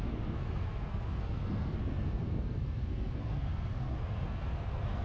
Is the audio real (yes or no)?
no